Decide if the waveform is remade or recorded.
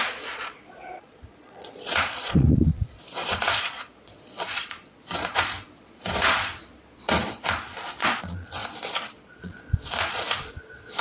remade